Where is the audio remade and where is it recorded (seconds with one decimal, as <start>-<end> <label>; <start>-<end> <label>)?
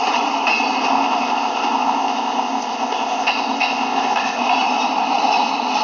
0.0-0.9 recorded; 0.9-4.4 remade; 4.4-5.8 recorded